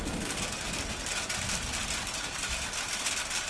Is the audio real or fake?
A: real